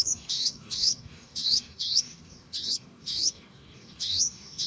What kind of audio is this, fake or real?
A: fake